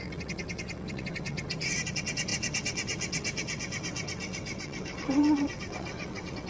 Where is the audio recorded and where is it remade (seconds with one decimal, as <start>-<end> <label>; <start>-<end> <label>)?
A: 0.0-6.5 remade